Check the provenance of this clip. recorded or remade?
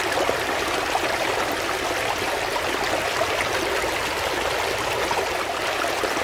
recorded